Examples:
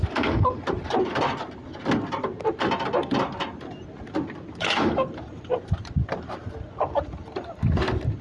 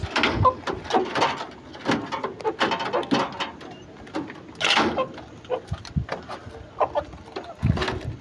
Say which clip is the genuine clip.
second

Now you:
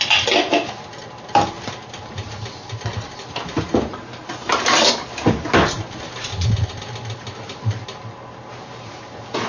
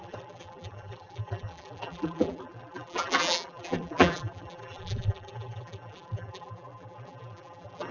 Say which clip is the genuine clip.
first